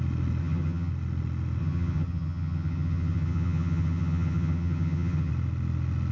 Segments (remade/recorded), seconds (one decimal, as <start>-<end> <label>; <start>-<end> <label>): 0.0-0.4 recorded; 0.4-0.9 remade; 0.9-1.6 recorded; 1.6-5.3 remade; 5.3-6.1 recorded